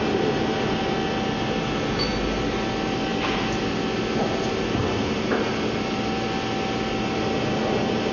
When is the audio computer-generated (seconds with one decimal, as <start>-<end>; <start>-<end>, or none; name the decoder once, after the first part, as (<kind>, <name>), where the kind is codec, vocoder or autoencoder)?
none